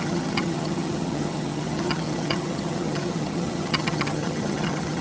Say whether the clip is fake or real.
fake